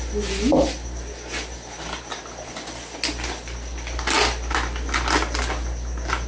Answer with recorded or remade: recorded